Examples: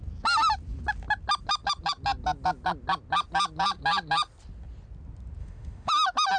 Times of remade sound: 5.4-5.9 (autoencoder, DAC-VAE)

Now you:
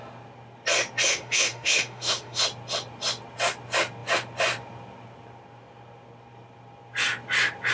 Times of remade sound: 1.1-2.4 (autoencoder, DAC-VAE)